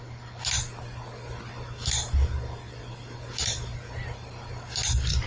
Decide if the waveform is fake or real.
real